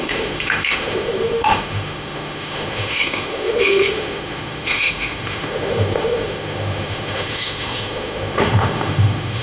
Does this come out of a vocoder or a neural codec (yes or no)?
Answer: yes